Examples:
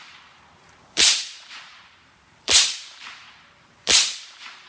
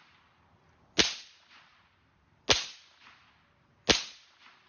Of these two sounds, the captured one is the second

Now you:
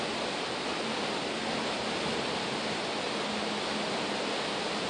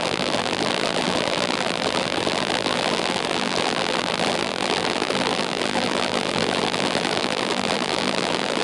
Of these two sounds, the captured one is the first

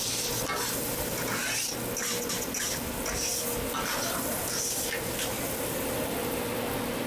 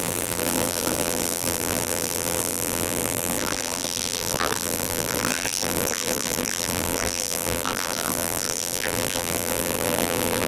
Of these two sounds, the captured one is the first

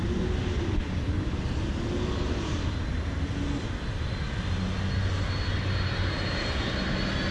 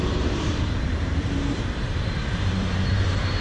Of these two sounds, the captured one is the first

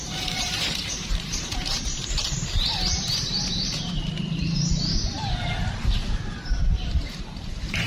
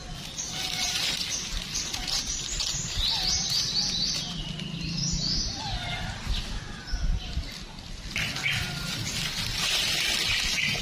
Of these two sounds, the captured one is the second